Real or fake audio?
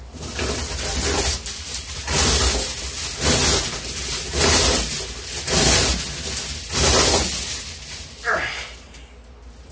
real